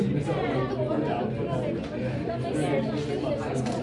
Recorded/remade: recorded